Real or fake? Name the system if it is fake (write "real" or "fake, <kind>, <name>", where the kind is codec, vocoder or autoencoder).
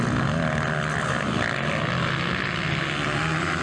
real